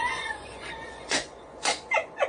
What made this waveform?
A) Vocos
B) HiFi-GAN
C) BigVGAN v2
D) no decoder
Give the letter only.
A